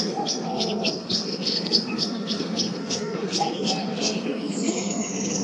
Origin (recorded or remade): remade